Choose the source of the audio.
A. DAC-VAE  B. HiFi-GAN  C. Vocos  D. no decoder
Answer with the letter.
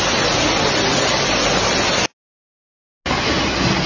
D